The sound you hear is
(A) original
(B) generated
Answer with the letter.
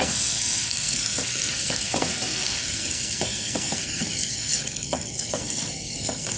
B